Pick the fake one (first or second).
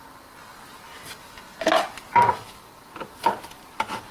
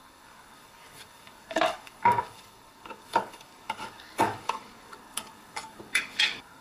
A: second